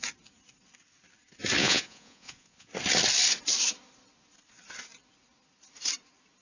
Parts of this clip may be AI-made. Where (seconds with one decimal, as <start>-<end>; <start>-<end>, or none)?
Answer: 1.6-2.7